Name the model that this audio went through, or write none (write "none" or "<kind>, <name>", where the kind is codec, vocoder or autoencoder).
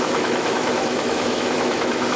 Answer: autoencoder, DAC-VAE